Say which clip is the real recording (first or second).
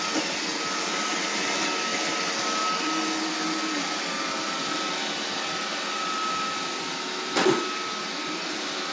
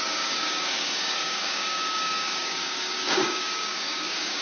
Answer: first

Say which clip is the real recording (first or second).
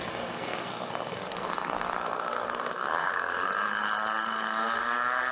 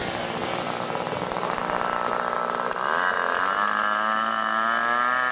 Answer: second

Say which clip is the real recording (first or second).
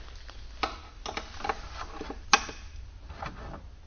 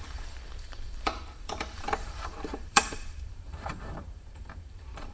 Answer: first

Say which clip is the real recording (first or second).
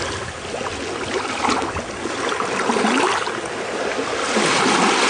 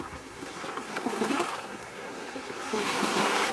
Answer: first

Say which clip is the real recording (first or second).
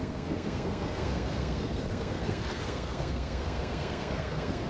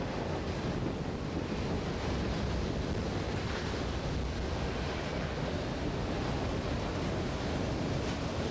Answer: second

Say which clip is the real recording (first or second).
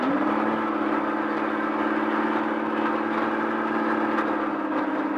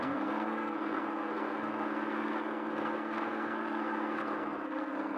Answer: first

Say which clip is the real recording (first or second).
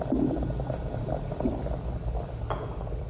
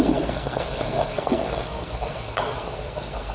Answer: first